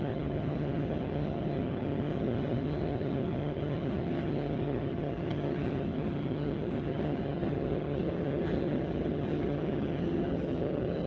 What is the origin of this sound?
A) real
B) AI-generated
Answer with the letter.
B